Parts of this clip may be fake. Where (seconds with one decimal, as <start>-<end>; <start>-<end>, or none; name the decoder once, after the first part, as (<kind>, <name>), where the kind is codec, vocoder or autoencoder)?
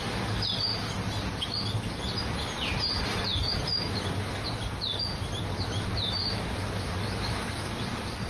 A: none